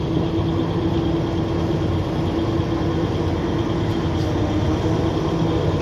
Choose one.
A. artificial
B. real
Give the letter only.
B